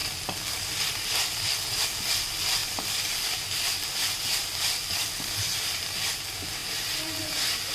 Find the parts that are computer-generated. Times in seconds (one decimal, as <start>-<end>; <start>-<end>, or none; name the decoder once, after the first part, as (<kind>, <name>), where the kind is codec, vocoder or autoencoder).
2.6-3.9 (vocoder, BigVGAN v2)